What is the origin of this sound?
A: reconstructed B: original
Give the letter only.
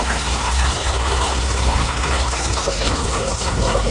A